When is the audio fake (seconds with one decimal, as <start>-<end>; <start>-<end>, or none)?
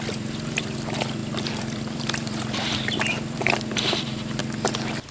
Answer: 0.0-4.4